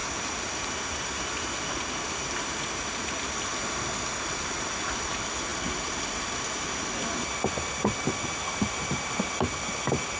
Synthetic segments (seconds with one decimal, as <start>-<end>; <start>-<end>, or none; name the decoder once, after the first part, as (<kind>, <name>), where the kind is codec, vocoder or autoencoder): none